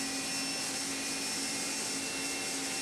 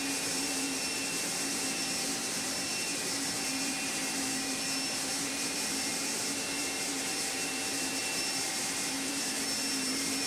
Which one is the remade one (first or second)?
second